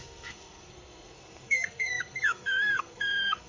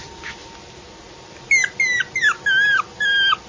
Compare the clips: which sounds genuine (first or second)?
second